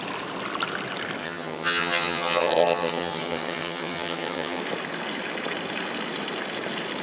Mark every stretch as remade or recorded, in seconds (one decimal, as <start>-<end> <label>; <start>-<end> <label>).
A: 0.0-1.2 recorded; 1.2-4.6 remade; 4.6-7.0 recorded